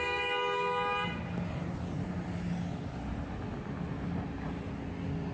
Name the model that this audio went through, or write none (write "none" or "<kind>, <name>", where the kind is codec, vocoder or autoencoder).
none